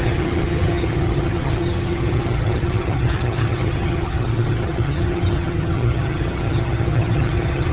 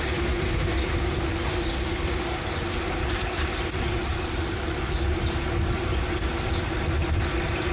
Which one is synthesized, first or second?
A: first